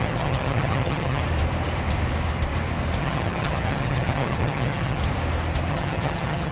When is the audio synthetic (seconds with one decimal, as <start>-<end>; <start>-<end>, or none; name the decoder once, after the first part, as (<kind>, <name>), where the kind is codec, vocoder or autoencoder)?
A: 0.0-1.2 (vocoder, HiFi-GAN); 3.0-5.0; 5.7-6.5